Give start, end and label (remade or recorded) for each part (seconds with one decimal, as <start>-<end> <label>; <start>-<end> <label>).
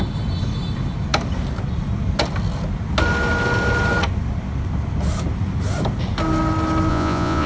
0.0-6.9 recorded; 6.9-7.5 remade